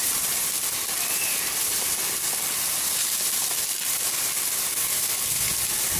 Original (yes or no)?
yes